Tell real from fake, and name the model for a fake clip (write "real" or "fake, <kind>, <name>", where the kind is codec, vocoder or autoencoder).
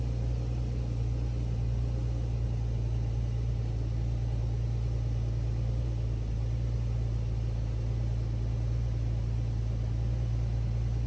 real